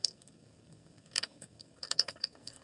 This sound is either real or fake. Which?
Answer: fake